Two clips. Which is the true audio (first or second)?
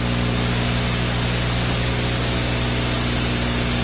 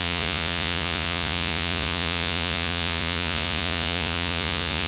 first